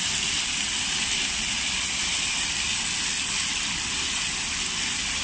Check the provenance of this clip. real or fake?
real